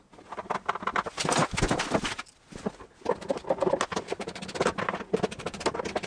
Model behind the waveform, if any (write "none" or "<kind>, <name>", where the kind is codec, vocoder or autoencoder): none